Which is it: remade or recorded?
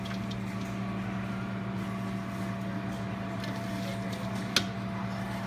recorded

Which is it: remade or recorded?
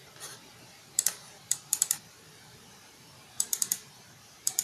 remade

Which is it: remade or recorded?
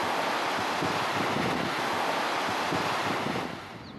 recorded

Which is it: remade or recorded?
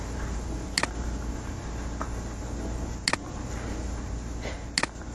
recorded